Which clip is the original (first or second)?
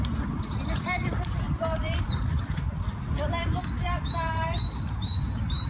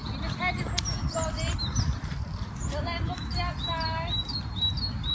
second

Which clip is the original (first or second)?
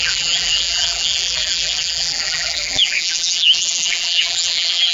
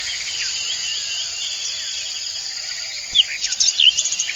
second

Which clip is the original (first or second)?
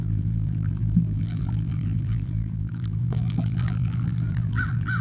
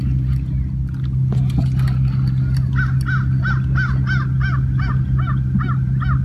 second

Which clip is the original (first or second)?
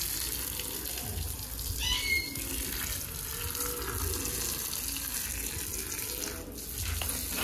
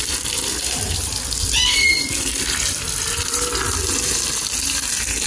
first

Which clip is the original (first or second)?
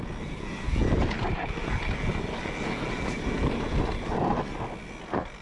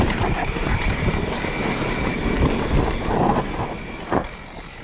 first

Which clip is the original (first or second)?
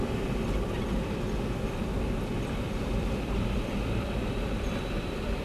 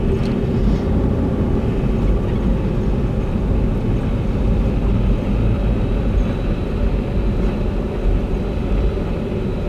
second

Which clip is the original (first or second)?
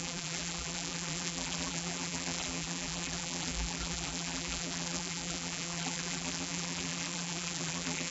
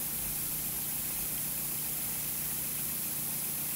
second